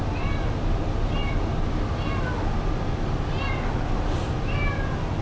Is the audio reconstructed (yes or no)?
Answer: no